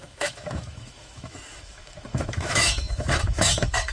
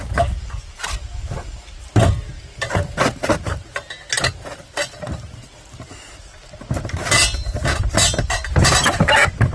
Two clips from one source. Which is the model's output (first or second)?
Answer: first